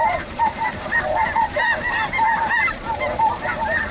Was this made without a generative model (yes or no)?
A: no